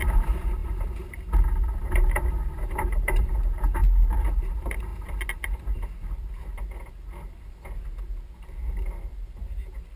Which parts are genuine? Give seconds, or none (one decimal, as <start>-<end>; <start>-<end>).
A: 3.8-4.3; 4.9-9.1